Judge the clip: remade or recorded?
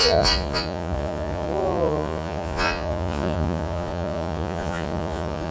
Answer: remade